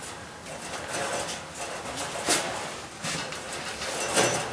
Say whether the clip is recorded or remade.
recorded